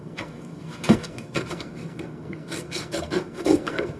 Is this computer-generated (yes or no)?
yes